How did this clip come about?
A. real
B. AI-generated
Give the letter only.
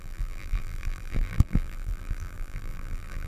B